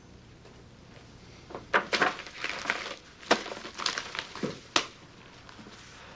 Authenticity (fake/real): real